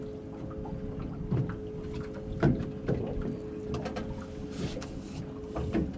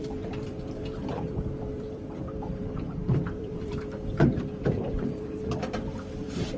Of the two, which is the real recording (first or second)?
first